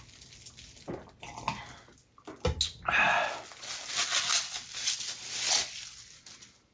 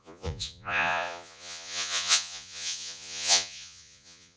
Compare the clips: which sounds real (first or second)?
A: first